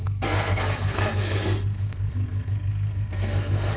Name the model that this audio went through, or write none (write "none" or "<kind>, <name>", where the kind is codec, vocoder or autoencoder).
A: codec, SNAC